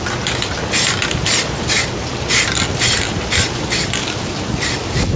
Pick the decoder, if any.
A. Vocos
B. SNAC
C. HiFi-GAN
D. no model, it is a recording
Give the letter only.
D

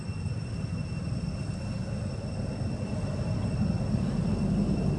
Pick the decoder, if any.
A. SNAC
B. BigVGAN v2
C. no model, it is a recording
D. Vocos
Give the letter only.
C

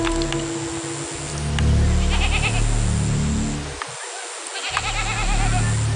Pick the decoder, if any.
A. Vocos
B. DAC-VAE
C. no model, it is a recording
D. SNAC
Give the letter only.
C